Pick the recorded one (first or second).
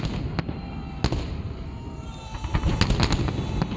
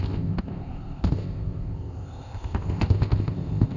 first